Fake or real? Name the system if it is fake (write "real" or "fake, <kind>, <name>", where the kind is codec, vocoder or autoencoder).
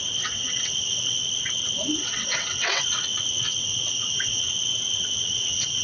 fake, vocoder, WaveNeXt